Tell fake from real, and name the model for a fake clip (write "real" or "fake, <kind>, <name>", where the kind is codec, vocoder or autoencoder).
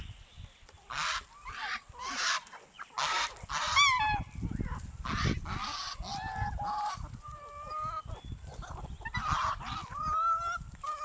real